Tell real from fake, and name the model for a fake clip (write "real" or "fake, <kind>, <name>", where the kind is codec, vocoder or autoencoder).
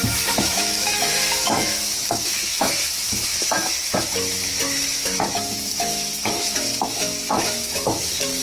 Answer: fake, autoencoder, DAC-VAE